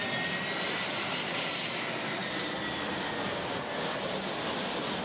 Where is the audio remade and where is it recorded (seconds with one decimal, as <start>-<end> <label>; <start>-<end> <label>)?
0.0-5.0 recorded